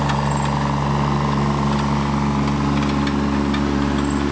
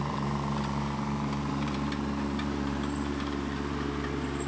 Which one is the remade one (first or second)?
second